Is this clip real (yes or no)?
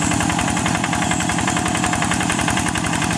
no